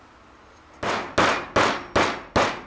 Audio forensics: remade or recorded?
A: recorded